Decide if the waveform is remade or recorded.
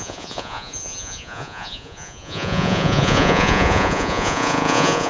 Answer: remade